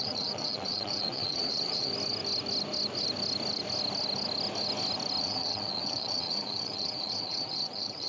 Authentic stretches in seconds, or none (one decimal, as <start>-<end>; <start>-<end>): 1.9-5.2